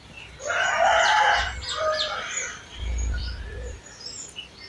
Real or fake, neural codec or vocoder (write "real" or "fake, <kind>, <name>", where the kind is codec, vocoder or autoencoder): fake, vocoder, BigVGAN v2